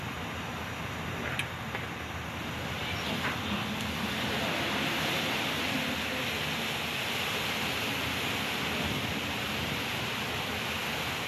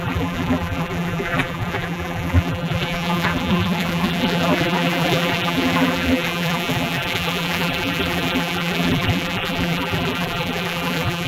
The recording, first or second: first